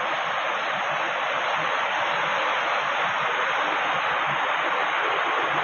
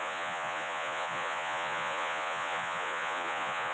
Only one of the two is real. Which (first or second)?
first